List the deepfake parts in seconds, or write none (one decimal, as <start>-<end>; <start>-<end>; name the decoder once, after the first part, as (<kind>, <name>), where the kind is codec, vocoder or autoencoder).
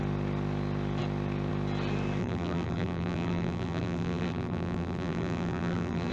2.2-6.1 (vocoder, BigVGAN v2)